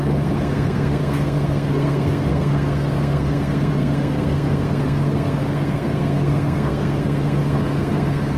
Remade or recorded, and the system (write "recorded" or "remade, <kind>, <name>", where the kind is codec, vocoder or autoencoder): remade, codec, SNAC